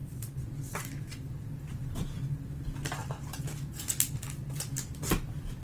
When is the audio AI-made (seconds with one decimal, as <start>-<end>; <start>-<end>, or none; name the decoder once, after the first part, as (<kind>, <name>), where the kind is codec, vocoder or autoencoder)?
none